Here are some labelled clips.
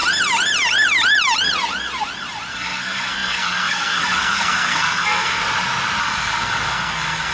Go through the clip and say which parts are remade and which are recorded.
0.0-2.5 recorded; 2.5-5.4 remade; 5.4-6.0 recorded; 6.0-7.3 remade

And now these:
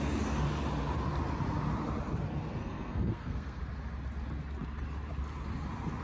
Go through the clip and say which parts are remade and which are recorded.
0.0-2.6 recorded; 2.6-3.6 remade; 3.6-6.0 recorded

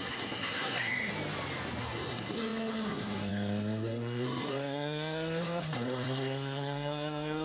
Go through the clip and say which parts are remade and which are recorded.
0.0-1.1 remade; 1.1-1.8 recorded; 1.8-7.4 remade

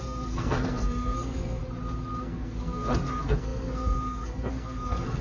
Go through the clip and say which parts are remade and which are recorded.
0.0-1.6 remade; 1.6-2.2 recorded; 2.2-5.2 remade

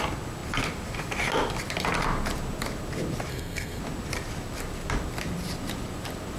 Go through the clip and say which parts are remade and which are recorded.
0.0-3.3 recorded; 3.3-3.8 remade; 3.8-6.4 recorded

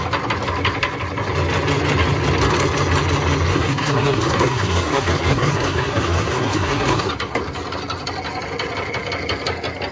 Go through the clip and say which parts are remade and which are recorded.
0.0-3.5 recorded; 3.5-7.1 remade; 7.1-9.9 recorded